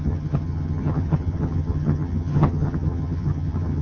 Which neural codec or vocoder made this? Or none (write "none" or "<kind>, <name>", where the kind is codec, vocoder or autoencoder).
vocoder, HiFi-GAN